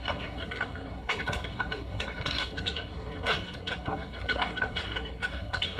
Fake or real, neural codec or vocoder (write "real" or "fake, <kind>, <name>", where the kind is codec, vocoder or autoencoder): fake, codec, SNAC